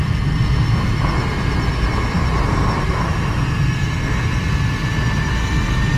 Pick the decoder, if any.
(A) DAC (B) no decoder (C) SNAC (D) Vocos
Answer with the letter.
B